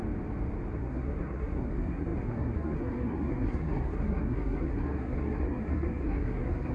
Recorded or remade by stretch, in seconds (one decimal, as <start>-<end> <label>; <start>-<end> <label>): 0.0-0.7 recorded; 0.7-6.7 remade